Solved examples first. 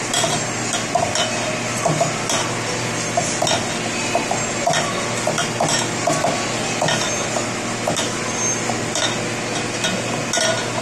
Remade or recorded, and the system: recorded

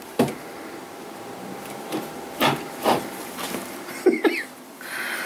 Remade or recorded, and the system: remade, vocoder, BigVGAN v2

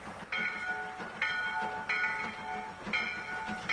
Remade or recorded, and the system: recorded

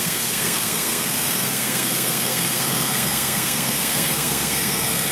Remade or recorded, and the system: remade, codec, SNAC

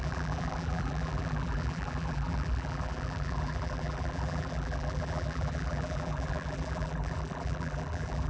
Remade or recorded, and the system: remade, vocoder, BigVGAN v2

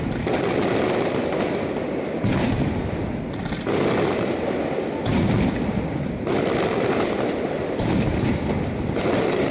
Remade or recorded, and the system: recorded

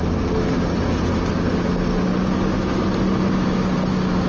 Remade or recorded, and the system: recorded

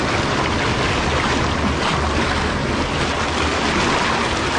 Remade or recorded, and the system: recorded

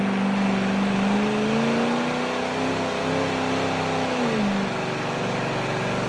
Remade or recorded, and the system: recorded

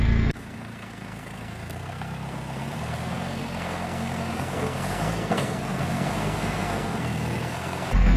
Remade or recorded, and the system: remade, codec, SNAC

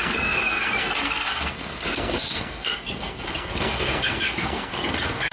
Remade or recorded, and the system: remade, codec, SNAC